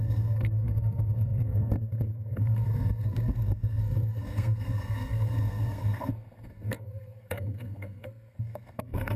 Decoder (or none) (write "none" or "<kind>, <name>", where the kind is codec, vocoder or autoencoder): codec, SNAC